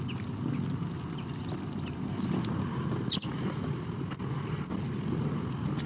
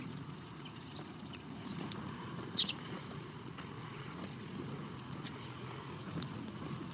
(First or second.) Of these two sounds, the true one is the first